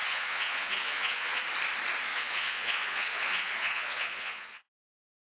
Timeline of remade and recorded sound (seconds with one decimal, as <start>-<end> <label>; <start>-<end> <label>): 0.0-1.4 remade; 1.4-2.1 recorded; 2.1-5.4 remade